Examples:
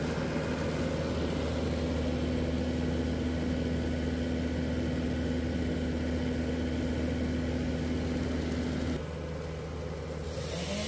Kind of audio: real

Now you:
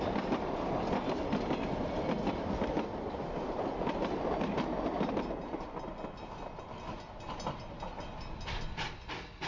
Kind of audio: real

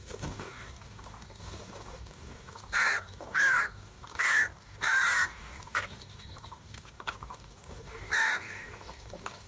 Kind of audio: fake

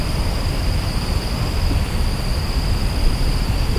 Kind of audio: real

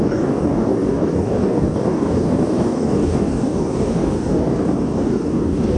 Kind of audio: fake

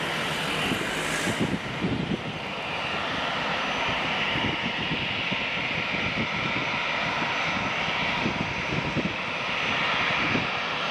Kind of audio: real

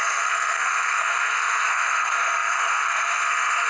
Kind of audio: fake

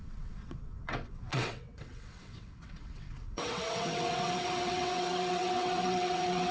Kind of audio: fake